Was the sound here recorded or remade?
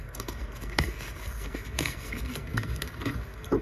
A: remade